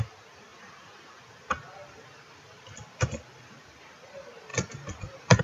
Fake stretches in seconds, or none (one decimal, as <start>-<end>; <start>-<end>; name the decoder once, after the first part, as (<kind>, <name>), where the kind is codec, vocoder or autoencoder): none